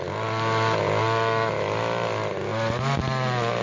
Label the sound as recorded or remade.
recorded